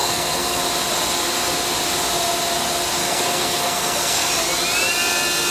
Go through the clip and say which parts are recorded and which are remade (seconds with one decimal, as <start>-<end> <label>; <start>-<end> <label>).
0.0-0.6 remade; 0.6-3.0 recorded; 3.0-4.3 remade; 4.3-5.5 recorded